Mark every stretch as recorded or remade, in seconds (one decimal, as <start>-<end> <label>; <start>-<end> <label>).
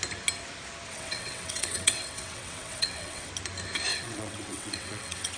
0.0-0.9 recorded; 0.9-3.3 remade; 3.3-3.9 recorded; 3.9-5.4 remade